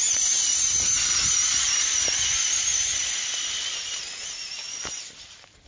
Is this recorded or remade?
recorded